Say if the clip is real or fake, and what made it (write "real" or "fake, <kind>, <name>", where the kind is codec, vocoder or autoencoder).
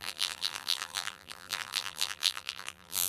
fake, vocoder, BigVGAN v2